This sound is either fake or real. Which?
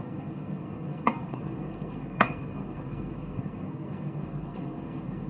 fake